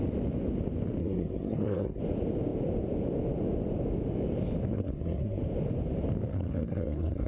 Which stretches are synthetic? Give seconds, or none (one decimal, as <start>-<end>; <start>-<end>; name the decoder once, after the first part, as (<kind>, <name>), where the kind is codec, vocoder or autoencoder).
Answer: 1.0-2.0 (codec, SNAC); 4.7-5.4; 6.3-7.3